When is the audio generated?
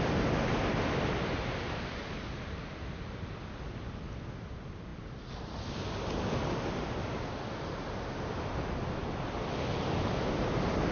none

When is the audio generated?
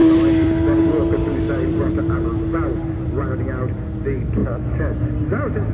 0.0-3.4 (vocoder, BigVGAN v2); 4.4-5.0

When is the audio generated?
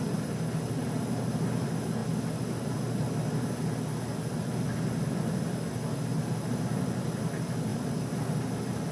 none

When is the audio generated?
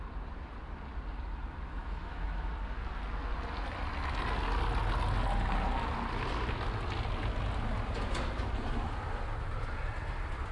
1.8-2.5 (autoencoder, DAC-VAE)